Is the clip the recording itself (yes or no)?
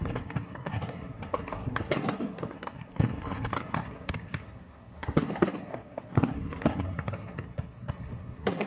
no